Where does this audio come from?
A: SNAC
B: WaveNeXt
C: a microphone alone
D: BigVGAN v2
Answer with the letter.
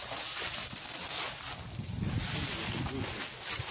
C